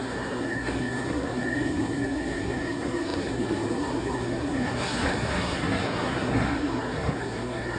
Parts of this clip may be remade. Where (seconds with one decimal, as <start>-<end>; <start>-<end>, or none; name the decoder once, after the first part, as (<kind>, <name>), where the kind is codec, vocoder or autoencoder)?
0.0-7.8 (codec, SNAC)